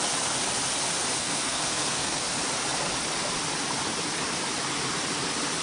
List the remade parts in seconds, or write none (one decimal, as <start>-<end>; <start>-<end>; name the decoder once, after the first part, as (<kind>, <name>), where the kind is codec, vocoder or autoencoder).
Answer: 1.2-2.2 (codec, SNAC)